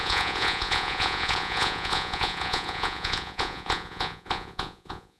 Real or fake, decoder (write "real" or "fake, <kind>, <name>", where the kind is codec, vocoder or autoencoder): fake, vocoder, Vocos